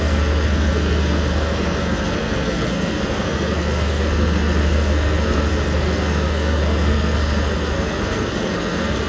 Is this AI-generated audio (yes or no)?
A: yes